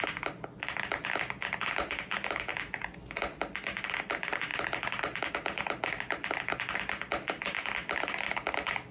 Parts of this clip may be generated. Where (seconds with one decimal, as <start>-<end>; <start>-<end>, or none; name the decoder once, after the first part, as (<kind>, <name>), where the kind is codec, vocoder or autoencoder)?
none